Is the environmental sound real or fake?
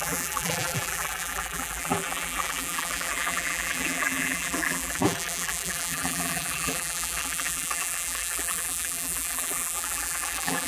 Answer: fake